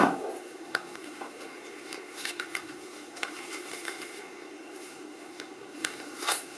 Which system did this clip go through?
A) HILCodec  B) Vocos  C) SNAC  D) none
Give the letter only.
C